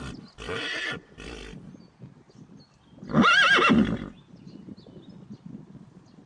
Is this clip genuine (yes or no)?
yes